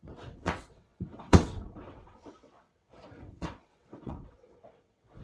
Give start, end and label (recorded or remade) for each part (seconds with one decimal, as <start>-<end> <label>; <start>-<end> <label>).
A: 0.0-5.2 remade